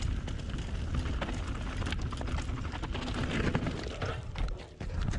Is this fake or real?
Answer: real